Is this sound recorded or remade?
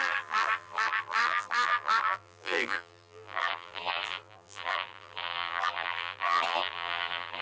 remade